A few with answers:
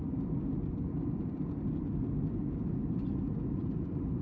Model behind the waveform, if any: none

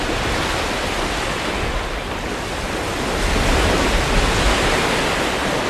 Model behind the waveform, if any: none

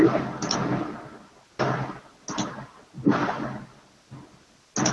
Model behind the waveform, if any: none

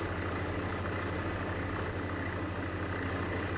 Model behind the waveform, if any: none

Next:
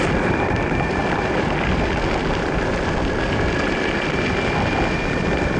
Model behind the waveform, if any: none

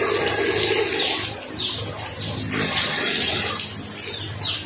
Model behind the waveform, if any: none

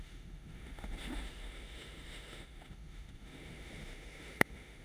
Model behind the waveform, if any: autoencoder, DAC-VAE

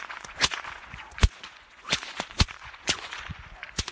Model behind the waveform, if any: vocoder, Vocos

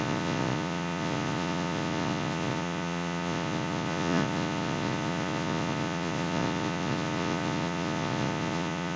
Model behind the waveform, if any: vocoder, Vocos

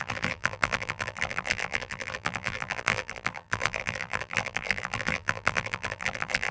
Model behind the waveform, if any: vocoder, BigVGAN v2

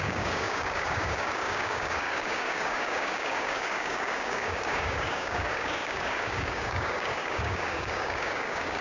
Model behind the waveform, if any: codec, DAC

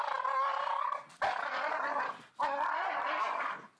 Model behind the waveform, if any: none